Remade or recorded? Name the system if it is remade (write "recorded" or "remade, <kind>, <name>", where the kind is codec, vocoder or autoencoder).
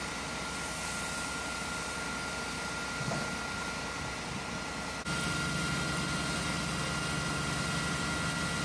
recorded